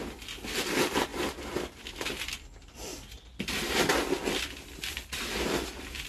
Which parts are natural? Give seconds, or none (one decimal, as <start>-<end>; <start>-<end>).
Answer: 0.0-6.1

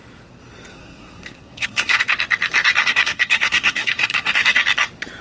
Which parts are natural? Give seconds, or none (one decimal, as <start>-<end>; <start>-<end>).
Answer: 0.0-0.7; 2.0-2.8; 4.3-5.2